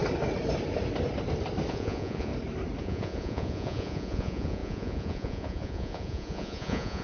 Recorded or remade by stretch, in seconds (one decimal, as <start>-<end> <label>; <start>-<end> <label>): 0.0-1.7 recorded; 1.7-2.3 remade; 2.3-2.8 recorded; 2.8-7.0 remade